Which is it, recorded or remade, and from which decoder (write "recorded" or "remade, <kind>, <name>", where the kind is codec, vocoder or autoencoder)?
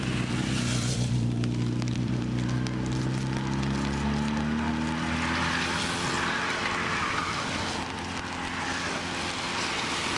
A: recorded